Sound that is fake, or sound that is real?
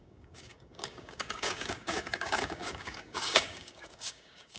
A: fake